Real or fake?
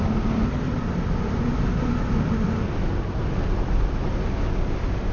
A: real